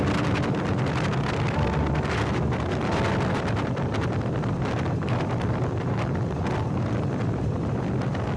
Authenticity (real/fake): fake